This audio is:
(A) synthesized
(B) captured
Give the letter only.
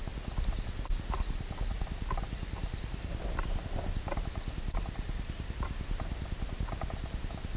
B